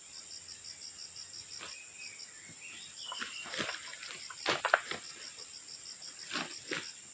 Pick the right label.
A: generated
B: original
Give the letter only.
B